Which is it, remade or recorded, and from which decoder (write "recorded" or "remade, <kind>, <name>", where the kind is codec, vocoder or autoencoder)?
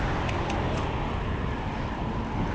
recorded